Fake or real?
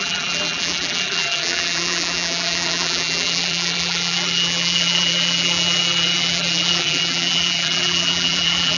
fake